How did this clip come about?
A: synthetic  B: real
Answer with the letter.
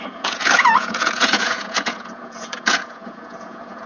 A